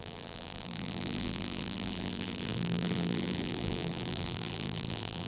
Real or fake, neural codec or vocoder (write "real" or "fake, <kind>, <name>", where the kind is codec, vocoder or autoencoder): fake, vocoder, BigVGAN v2